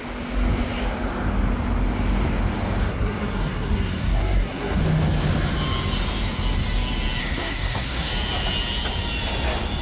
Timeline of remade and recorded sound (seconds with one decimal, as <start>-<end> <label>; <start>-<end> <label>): 0.0-2.9 recorded; 2.9-4.8 remade; 4.8-7.2 recorded; 7.2-8.1 remade; 8.1-9.8 recorded